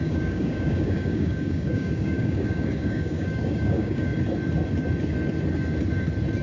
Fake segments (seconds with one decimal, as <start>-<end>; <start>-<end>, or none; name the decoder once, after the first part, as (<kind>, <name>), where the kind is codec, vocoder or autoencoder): 0.0-4.1 (codec, DAC)